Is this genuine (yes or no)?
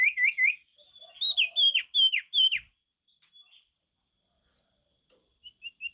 yes